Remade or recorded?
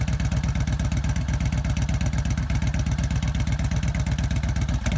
recorded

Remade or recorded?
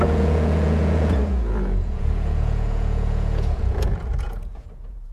remade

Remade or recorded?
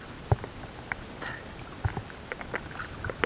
recorded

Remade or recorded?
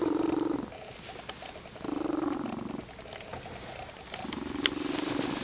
recorded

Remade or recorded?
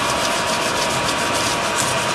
recorded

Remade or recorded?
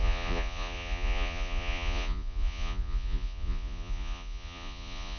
remade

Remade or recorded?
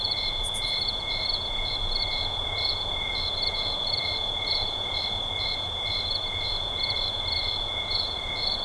remade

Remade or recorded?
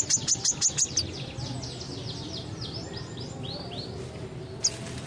recorded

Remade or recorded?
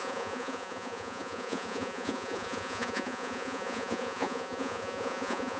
remade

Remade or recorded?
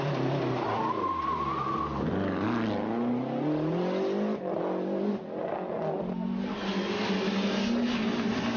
recorded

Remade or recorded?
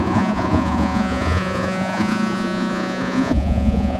remade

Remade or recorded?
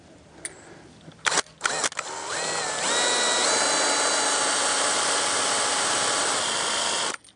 recorded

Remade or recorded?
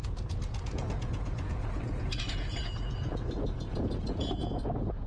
remade